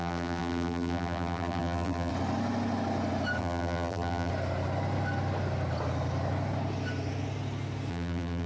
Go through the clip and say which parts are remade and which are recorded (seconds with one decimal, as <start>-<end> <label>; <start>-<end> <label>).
0.0-2.1 remade; 2.1-3.4 recorded; 3.4-4.3 remade; 4.3-7.9 recorded; 7.9-8.5 remade